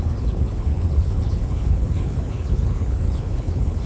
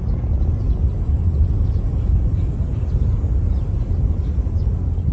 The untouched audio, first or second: second